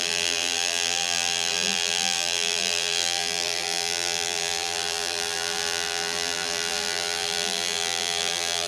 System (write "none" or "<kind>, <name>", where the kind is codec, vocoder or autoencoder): vocoder, BigVGAN v2